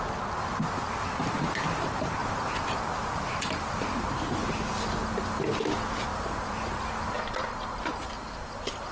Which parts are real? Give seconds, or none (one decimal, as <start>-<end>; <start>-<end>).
0.0-8.9